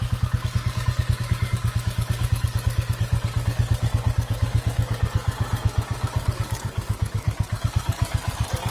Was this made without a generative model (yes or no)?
no